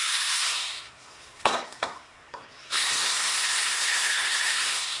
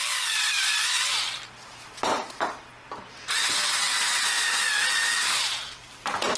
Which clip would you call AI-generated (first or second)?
first